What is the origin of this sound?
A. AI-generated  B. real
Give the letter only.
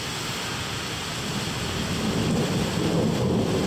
B